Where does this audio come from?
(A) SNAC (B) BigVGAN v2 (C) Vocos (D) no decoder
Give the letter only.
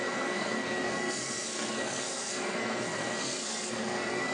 A